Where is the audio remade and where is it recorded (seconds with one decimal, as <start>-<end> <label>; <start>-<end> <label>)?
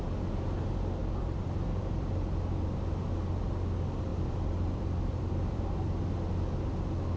0.0-1.0 recorded; 1.0-2.1 remade; 2.1-4.1 recorded; 4.1-5.9 remade; 5.9-7.2 recorded